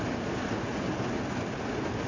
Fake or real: real